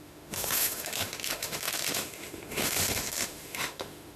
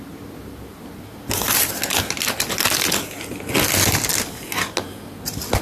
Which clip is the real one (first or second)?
second